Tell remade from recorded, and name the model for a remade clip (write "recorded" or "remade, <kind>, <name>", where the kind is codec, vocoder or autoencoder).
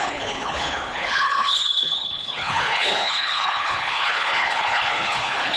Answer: remade, codec, HILCodec